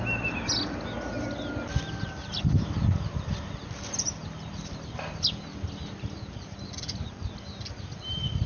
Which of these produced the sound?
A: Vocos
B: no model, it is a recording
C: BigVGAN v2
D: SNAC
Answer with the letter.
B